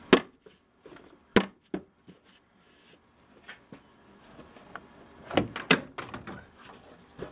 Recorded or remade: recorded